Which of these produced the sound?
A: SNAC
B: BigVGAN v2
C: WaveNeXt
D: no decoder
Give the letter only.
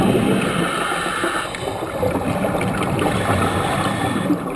D